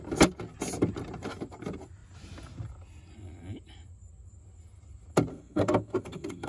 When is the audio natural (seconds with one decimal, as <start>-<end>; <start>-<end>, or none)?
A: 0.0-5.3